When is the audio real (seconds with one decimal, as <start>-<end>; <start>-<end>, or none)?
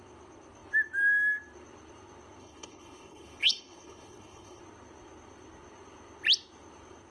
0.0-2.4; 4.6-7.1